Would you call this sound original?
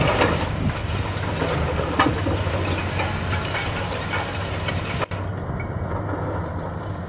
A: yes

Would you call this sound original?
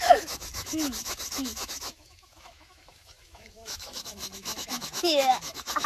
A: no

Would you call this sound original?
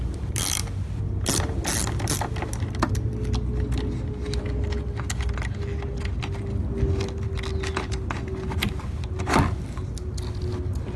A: yes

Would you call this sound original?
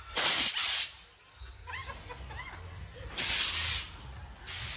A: yes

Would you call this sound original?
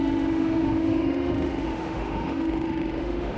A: no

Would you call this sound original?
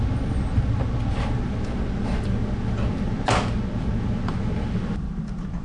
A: yes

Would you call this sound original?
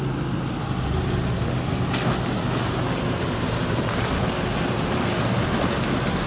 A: yes